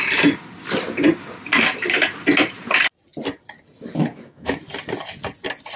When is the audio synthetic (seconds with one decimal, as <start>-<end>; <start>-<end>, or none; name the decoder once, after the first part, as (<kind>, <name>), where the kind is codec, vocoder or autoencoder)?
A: 4.1-4.6 (autoencoder, DAC-VAE)